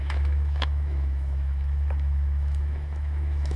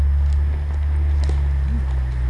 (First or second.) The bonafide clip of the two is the second